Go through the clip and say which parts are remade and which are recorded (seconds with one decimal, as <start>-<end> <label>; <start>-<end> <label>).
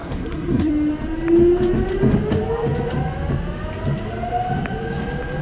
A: 0.0-0.7 remade; 0.7-5.4 recorded